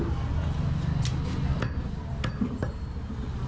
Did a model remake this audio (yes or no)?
no